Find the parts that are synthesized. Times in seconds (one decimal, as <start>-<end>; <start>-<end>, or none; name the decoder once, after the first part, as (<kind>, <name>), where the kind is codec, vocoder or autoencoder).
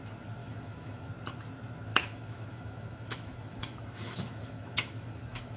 0.4-1.1 (autoencoder, DAC-VAE); 1.9-5.6